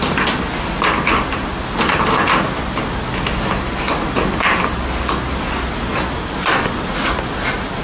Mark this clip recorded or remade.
remade